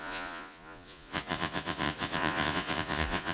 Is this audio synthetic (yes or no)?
yes